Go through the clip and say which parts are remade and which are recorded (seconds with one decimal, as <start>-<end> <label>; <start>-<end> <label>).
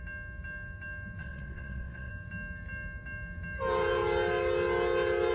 0.0-1.2 recorded; 1.2-2.1 remade; 2.1-5.3 recorded